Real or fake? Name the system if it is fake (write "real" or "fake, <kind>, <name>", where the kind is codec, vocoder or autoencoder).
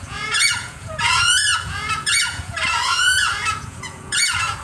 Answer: fake, vocoder, Vocos